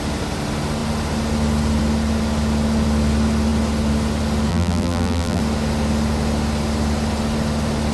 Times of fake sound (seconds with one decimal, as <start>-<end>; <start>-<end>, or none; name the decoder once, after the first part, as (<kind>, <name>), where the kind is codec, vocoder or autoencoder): 4.5-5.4 (vocoder, BigVGAN v2)